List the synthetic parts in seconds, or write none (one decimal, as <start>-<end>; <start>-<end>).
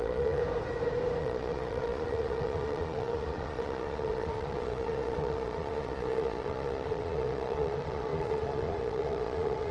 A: 0.0-0.4; 1.2-9.7